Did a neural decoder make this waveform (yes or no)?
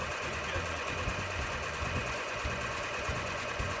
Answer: yes